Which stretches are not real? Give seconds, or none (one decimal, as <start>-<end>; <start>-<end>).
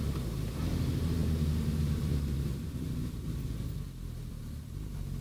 0.0-5.2